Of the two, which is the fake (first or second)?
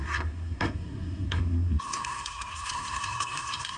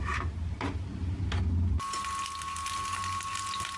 first